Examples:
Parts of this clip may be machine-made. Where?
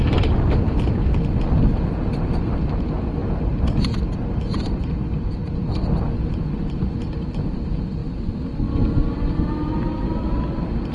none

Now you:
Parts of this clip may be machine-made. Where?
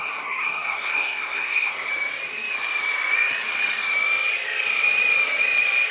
0.0-1.9 (codec, SNAC)